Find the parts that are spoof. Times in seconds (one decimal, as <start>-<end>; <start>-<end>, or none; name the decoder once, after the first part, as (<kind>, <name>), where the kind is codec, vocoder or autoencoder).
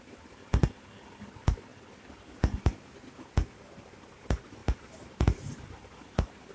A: 4.6-5.6 (vocoder, BigVGAN v2)